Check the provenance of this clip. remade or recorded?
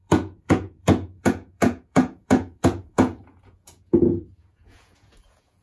remade